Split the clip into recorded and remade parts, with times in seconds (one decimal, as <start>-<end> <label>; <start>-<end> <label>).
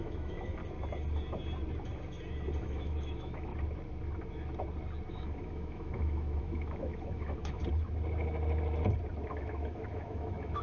0.0-0.6 remade; 0.6-2.6 recorded; 2.6-3.5 remade; 3.5-5.1 recorded; 5.1-7.6 remade; 7.6-9.3 recorded; 9.3-10.6 remade